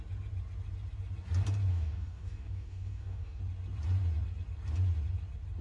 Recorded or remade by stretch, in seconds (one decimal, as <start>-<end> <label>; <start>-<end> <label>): 0.0-1.7 recorded; 1.7-3.4 remade; 3.4-5.6 recorded